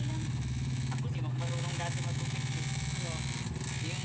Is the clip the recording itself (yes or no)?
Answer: yes